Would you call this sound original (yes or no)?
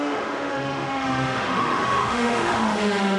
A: no